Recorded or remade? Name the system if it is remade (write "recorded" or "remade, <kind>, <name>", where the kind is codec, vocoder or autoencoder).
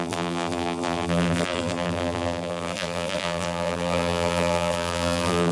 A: remade, vocoder, BigVGAN v2